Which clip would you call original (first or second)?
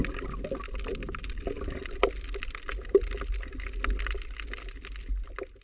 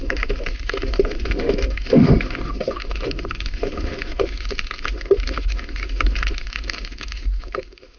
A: first